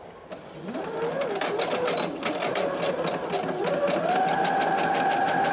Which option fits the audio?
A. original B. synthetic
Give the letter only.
A